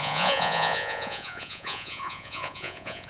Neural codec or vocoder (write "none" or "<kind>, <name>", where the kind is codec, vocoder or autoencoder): vocoder, Vocos